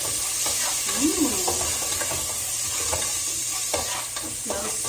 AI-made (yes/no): no